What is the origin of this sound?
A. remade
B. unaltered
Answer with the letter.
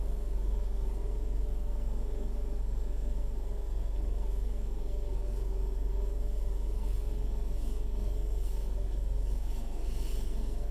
A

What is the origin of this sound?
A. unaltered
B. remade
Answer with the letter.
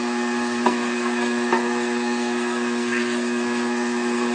B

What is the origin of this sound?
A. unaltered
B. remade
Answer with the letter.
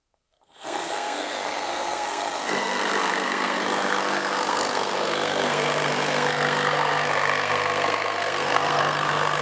B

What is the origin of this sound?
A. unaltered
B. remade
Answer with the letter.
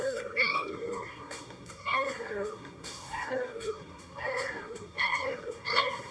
B